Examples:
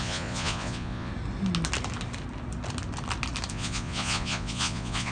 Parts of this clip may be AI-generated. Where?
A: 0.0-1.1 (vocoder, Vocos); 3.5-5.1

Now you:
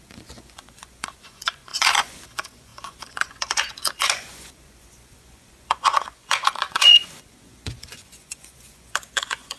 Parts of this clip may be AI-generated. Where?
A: 0.0-9.6 (vocoder, Vocos)

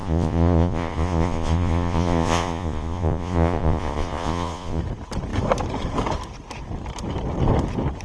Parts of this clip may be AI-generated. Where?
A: 0.0-4.8 (vocoder, Vocos)

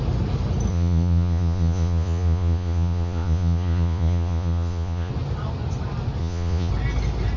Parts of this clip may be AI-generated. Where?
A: 0.7-5.1 (vocoder, Vocos); 6.2-6.7

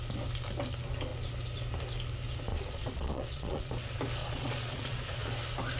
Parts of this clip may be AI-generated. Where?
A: 2.5-3.7 (vocoder, Vocos); 4.2-5.3

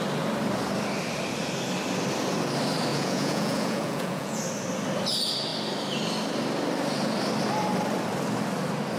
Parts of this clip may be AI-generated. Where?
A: 2.9-4.4 (vocoder, Vocos)

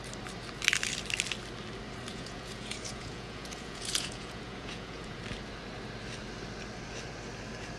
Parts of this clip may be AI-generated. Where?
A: 2.1-5.2 (vocoder, Vocos)

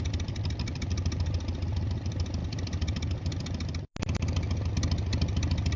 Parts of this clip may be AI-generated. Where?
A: none